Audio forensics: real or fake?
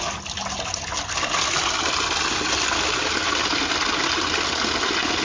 real